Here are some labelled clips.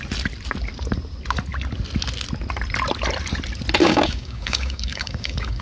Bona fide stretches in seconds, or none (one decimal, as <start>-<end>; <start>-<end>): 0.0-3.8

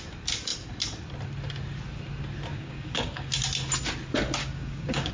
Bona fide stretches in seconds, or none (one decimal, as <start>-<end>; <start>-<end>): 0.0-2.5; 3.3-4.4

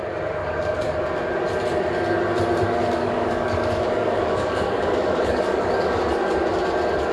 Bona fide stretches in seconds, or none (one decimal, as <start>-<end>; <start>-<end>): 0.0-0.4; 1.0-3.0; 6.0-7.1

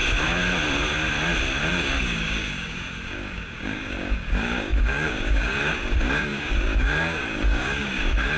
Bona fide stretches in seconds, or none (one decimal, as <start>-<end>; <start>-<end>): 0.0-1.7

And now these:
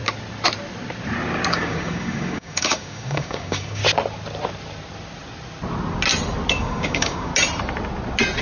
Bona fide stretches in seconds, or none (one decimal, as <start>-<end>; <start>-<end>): 0.0-1.5; 3.8-6.5; 7.3-8.4